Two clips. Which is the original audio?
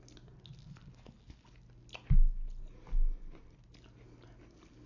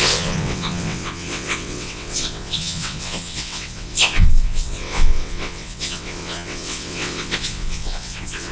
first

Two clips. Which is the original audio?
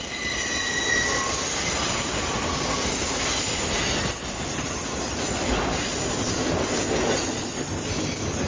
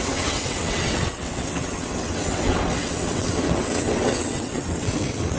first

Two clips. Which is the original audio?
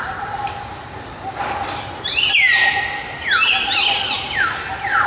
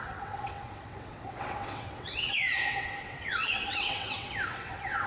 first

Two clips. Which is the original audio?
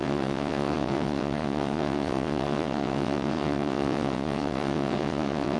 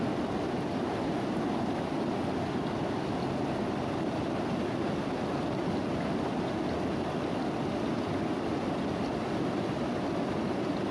second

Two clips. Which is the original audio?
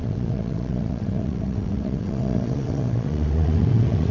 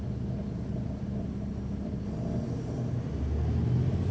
second